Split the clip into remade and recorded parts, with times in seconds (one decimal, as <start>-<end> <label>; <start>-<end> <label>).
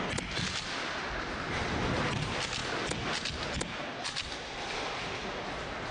0.0-5.9 recorded